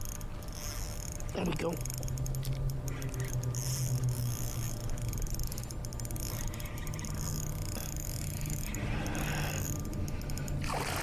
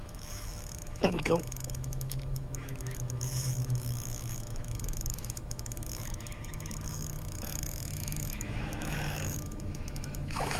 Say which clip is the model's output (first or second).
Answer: second